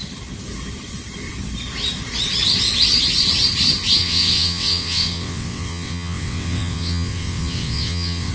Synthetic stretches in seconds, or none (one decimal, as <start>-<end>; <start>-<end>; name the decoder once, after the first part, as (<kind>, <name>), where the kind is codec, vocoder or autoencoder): 4.0-8.3 (vocoder, WaveNeXt)